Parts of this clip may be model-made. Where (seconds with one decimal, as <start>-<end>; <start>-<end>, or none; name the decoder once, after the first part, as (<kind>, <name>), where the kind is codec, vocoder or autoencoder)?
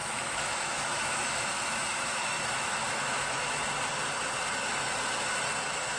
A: 0.0-3.6 (autoencoder, DAC-VAE)